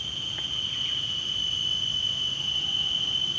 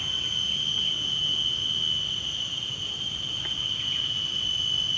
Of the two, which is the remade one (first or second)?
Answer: first